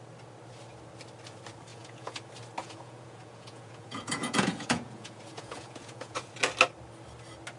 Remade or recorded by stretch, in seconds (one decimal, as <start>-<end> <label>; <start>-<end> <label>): 0.0-1.7 recorded; 1.7-2.2 remade; 2.2-2.6 recorded; 2.6-6.3 remade; 6.3-7.6 recorded